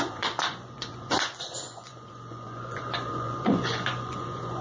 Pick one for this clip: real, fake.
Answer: fake